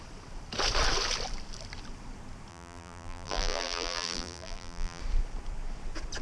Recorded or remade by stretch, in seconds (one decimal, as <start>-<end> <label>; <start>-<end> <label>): 0.0-2.5 recorded; 2.5-5.0 remade; 5.0-6.2 recorded